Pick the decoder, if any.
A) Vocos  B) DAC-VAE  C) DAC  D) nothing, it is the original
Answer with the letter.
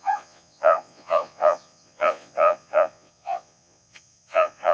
A